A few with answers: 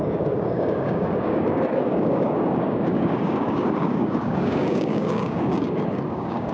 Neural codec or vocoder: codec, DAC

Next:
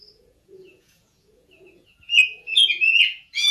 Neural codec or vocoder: vocoder, Vocos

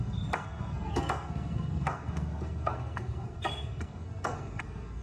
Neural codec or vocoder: codec, SNAC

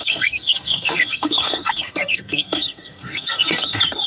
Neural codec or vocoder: codec, SNAC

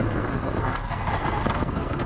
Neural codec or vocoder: codec, SNAC